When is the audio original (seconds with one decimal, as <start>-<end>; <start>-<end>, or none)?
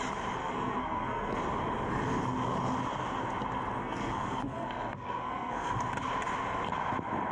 0.0-0.4; 1.4-3.8; 5.8-7.3